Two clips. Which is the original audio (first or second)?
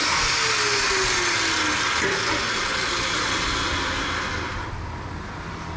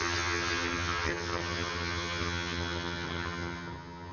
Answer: first